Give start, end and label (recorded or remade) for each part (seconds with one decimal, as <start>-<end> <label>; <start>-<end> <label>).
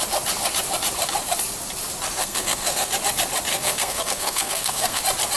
0.0-2.2 recorded; 2.2-2.9 remade; 2.9-3.5 recorded; 3.5-5.0 remade; 5.0-5.4 recorded